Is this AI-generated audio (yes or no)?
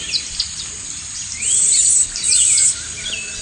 yes